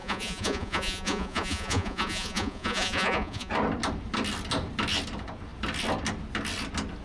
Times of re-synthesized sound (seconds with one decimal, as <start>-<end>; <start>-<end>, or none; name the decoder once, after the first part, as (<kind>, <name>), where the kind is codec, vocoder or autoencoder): 0.0-3.5 (vocoder, Vocos)